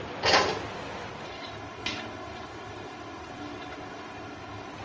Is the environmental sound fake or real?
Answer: real